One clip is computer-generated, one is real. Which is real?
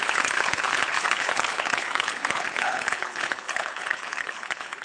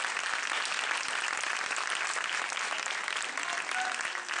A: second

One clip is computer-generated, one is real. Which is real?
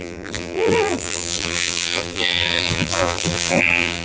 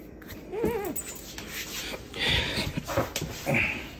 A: second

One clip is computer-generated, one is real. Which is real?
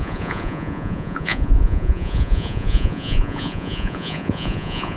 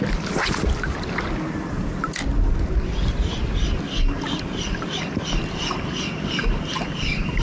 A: second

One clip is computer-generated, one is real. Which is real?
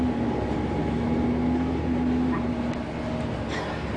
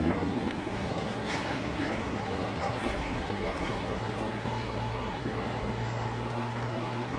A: first